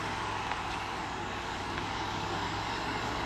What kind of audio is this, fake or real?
fake